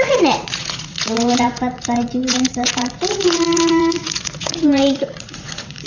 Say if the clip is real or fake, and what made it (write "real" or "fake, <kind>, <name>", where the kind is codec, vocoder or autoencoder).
fake, vocoder, Vocos